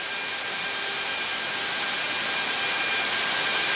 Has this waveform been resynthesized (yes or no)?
no